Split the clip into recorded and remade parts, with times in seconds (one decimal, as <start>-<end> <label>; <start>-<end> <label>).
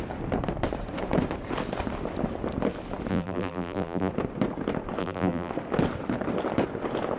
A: 0.0-3.1 recorded; 3.1-4.1 remade; 4.1-5.0 recorded; 5.0-5.5 remade; 5.5-7.2 recorded